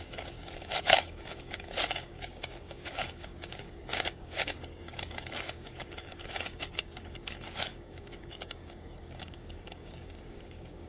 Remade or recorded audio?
remade